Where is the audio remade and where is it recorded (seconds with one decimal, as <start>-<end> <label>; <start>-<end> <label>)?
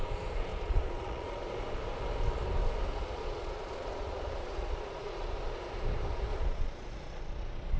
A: 0.0-0.5 recorded; 0.5-1.5 remade; 1.5-3.0 recorded; 3.0-5.4 remade; 5.4-6.3 recorded; 6.3-7.2 remade; 7.2-7.8 recorded